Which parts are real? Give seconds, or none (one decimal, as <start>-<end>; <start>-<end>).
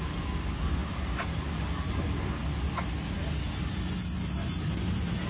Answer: 0.0-5.3